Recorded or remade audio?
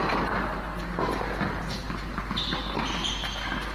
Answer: recorded